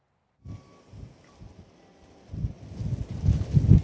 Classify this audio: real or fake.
real